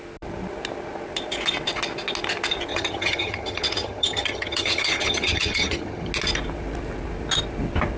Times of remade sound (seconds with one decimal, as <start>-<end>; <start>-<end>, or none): 2.7-6.1